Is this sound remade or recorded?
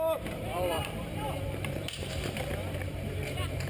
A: remade